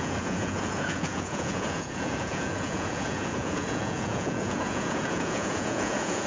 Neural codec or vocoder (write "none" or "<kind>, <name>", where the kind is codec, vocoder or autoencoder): vocoder, Vocos